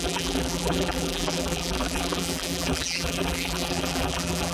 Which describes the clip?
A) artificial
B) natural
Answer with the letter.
A